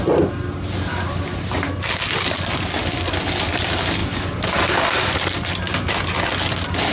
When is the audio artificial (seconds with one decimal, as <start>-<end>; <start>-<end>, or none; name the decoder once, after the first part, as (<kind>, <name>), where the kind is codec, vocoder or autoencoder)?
none